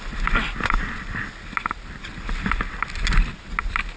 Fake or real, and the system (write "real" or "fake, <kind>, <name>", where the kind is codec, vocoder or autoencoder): real